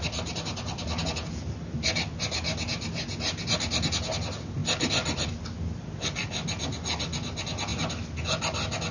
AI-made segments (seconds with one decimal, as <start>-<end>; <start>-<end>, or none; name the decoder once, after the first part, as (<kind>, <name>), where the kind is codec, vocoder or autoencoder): none